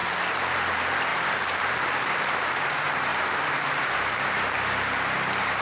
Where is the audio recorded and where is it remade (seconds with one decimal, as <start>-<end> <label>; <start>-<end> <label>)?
0.0-0.7 recorded; 0.7-5.6 remade